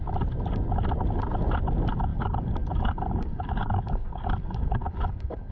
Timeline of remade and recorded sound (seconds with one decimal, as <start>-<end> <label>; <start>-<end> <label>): 0.0-2.1 recorded; 2.1-5.5 remade